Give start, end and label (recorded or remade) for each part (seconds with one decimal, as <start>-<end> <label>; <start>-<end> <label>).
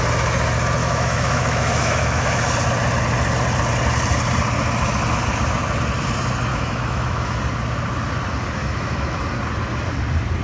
0.0-0.8 recorded; 0.8-2.4 remade; 2.4-6.5 recorded; 6.5-7.4 remade; 7.4-8.6 recorded; 8.6-9.2 remade; 9.2-10.4 recorded